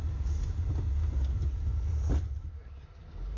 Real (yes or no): yes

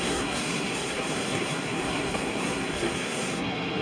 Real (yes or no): no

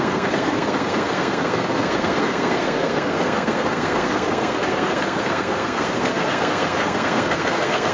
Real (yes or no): no